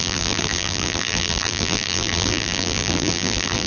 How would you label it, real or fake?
fake